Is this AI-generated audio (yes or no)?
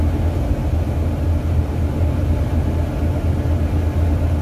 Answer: no